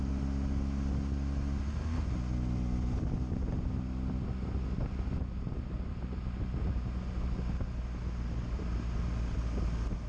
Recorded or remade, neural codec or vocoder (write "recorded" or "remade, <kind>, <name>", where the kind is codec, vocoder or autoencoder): recorded